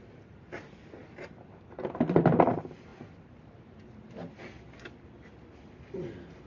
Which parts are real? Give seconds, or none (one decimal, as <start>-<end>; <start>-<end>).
0.0-6.5